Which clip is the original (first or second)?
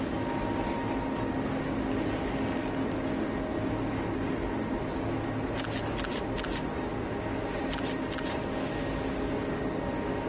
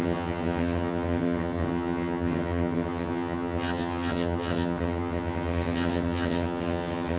first